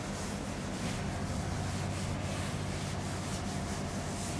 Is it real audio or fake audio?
real